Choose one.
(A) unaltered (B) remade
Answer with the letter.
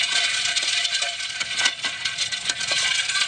B